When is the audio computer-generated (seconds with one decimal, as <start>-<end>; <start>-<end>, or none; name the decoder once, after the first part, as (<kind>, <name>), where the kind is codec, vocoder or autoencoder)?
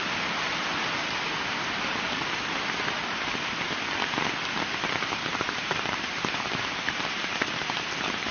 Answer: 0.0-0.7 (vocoder, BigVGAN v2); 4.6-8.3